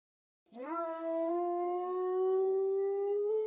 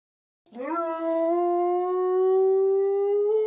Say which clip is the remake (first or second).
first